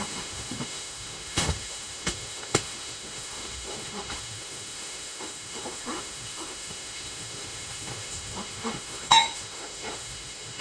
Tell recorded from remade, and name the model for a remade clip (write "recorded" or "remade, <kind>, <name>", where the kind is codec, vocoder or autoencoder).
remade, autoencoder, DAC-VAE